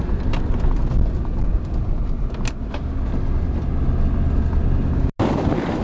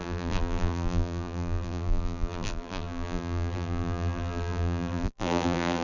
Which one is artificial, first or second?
second